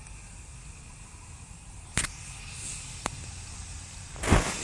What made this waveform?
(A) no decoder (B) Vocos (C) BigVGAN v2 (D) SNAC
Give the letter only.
A